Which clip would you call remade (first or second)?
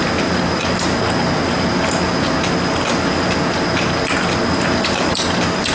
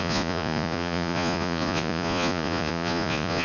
second